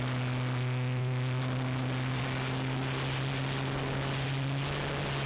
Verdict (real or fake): real